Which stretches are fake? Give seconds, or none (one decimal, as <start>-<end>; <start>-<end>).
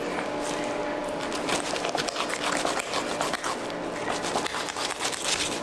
1.0-2.0